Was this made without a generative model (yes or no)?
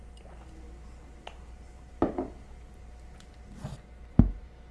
yes